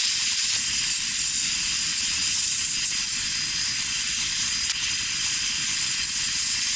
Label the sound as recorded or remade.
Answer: recorded